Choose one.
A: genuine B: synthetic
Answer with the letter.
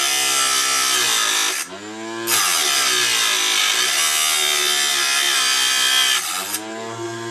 A